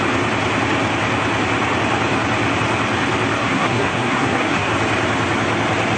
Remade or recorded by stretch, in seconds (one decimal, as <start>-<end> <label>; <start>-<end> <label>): 0.0-3.4 recorded; 3.4-4.7 remade; 4.7-6.0 recorded